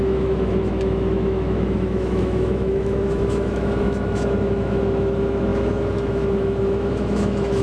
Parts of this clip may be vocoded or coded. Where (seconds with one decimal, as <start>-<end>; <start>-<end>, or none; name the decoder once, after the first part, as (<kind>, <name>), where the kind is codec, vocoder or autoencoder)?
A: 0.0-7.6 (autoencoder, DAC-VAE)